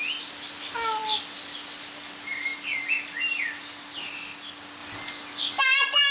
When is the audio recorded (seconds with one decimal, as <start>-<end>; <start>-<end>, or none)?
0.0-6.1